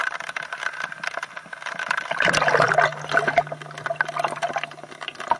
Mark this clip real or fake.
real